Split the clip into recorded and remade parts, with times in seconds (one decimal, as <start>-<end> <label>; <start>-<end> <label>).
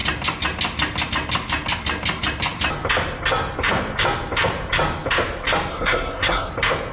0.0-5.7 recorded; 5.7-6.5 remade; 6.5-6.9 recorded